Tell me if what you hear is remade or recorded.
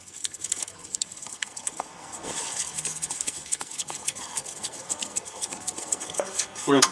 remade